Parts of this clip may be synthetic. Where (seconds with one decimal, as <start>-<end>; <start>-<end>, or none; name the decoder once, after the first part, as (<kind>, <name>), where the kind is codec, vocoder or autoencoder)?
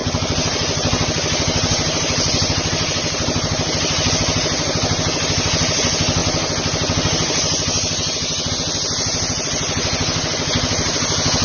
0.0-4.1 (vocoder, BigVGAN v2)